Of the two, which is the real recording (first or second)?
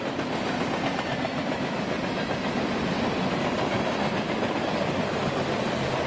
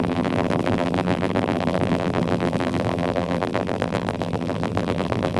first